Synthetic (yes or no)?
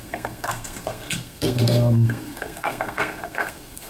yes